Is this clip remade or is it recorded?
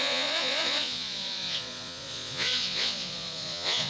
remade